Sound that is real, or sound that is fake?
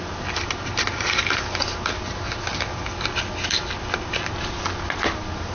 real